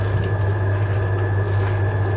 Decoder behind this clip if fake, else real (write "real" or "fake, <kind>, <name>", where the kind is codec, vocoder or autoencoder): real